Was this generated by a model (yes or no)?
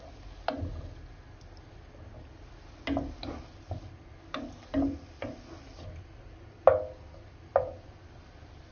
no